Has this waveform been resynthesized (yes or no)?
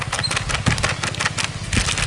no